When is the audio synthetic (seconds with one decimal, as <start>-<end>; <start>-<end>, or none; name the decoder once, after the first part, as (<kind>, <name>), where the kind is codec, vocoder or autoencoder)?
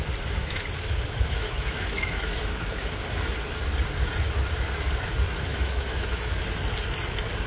0.4-2.8 (autoencoder, DAC-VAE); 5.5-6.4